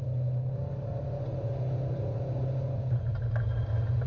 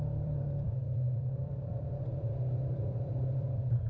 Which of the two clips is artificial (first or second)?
second